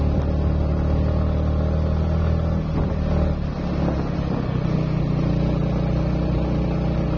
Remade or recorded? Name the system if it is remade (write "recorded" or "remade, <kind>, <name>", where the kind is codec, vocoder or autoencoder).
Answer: recorded